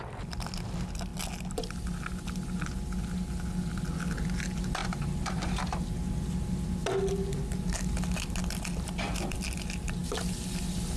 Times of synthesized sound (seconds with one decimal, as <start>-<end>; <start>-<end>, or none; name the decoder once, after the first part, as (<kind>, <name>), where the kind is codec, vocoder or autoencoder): none